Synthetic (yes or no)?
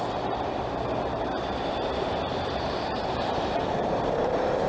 yes